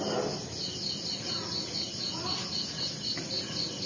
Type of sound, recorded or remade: recorded